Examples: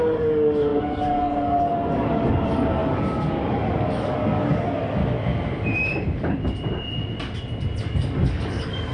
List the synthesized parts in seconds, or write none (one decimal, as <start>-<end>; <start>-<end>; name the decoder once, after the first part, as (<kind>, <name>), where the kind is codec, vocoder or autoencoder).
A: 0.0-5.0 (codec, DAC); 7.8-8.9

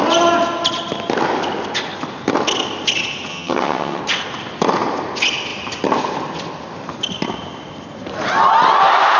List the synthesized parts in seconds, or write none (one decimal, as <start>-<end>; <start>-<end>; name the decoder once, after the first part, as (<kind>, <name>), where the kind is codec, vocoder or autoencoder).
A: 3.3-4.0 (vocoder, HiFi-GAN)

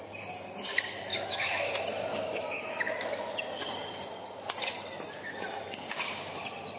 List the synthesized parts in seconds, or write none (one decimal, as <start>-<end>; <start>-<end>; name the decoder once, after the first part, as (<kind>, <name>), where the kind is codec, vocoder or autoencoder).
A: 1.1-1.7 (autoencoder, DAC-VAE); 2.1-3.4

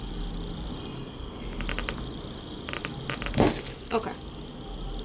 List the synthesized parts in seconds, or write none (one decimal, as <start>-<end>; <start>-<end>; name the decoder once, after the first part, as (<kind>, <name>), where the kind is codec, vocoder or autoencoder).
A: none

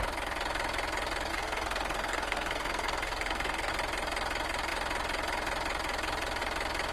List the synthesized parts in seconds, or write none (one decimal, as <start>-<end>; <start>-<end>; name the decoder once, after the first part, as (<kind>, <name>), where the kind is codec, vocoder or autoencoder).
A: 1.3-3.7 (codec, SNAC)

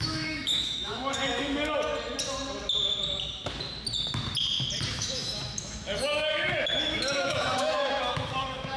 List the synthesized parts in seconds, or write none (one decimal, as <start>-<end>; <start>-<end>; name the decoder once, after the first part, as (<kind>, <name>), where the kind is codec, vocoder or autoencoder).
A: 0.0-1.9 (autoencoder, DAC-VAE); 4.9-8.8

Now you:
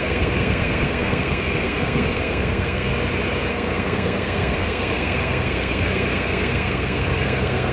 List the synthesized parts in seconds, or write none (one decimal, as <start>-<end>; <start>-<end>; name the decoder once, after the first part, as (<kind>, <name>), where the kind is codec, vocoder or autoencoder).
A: 0.0-2.9 (codec, SNAC); 3.5-7.7